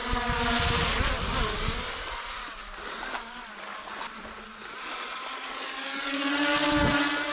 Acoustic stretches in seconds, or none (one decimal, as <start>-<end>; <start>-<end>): 0.0-7.3